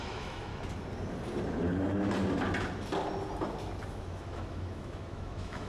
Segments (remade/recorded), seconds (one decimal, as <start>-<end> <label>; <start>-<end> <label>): 0.0-0.5 remade; 0.5-3.9 recorded; 3.9-5.7 remade